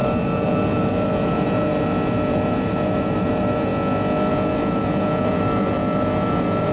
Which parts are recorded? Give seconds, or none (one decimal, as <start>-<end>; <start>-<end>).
3.7-4.3